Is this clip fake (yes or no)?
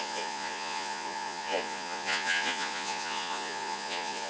yes